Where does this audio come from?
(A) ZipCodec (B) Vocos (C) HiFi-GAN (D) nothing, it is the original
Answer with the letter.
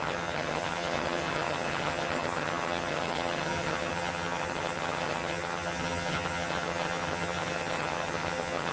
C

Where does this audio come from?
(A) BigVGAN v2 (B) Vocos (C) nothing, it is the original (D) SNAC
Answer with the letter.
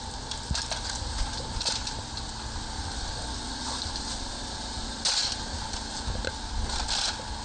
C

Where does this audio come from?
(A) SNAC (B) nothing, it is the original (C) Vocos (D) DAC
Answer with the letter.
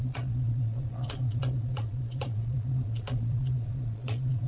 C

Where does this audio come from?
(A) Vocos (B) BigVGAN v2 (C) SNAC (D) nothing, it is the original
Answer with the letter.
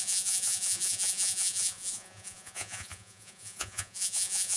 A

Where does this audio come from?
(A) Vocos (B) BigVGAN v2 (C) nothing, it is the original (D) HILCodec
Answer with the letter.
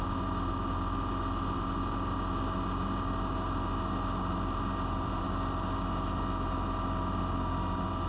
C